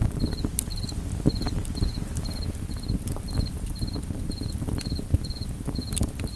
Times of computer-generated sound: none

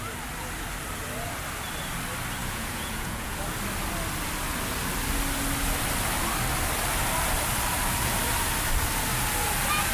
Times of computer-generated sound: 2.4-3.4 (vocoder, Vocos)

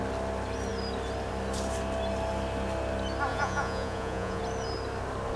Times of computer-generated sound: 3.3-4.4 (vocoder, Vocos)

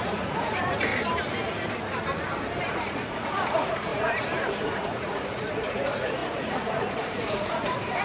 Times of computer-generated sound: 0.0-0.9 (vocoder, Vocos); 2.6-8.0